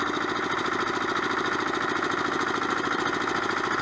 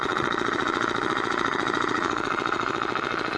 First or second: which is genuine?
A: first